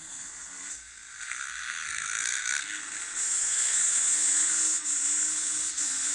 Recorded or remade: remade